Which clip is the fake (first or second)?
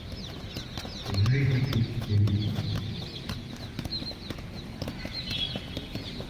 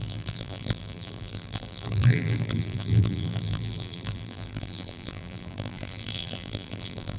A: second